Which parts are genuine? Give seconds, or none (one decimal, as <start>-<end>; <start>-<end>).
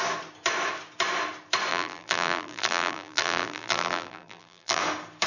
0.0-1.7; 4.8-5.3